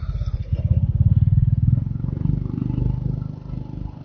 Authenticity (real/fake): real